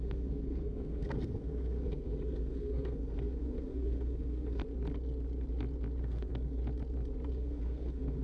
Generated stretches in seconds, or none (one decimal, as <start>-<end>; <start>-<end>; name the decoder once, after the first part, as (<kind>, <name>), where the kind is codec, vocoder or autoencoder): 0.0-4.6 (codec, SNAC); 6.0-6.6; 7.3-8.2